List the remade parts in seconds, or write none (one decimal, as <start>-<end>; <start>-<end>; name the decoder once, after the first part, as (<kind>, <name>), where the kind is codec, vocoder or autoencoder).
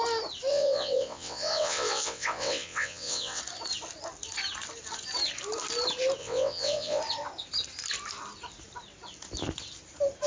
0.5-3.4 (vocoder, WaveNeXt); 6.2-7.0